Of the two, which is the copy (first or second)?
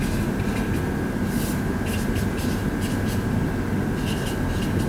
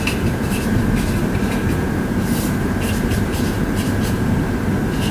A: second